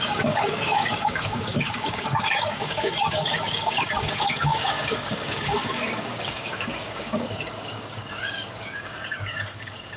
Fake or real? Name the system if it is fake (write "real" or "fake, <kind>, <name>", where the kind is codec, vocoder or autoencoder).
fake, codec, DAC